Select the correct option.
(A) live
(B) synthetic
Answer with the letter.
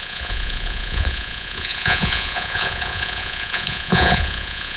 B